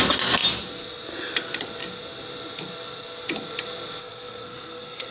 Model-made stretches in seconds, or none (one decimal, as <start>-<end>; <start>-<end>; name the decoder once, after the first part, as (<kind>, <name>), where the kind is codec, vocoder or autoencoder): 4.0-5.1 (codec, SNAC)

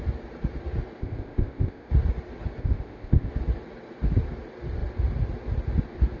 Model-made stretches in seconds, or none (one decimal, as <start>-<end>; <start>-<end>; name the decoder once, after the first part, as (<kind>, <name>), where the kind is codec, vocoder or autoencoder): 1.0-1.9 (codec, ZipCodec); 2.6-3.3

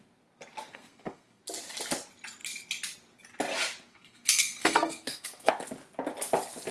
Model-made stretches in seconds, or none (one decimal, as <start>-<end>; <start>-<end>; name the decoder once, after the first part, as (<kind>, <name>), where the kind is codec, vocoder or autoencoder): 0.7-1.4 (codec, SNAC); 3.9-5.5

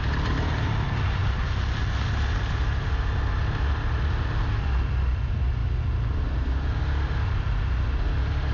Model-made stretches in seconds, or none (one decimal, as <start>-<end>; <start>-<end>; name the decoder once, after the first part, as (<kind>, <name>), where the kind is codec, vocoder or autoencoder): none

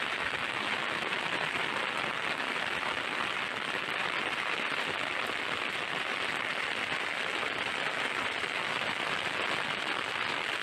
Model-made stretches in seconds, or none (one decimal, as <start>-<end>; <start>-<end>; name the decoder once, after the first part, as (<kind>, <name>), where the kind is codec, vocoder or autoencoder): 0.0-10.6 (vocoder, BigVGAN v2)